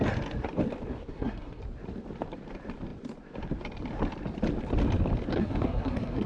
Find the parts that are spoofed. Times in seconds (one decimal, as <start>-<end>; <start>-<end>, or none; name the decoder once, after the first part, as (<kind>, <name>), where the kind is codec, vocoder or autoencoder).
1.1-1.6 (codec, SNAC); 5.3-6.3

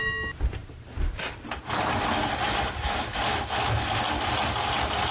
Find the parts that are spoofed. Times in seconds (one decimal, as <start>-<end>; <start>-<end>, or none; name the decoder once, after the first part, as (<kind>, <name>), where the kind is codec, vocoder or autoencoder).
none

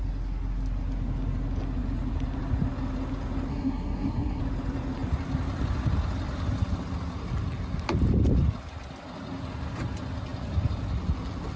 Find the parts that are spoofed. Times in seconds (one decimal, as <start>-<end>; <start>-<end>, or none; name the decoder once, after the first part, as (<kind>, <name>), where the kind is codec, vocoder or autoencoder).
3.5-4.4 (codec, SNAC)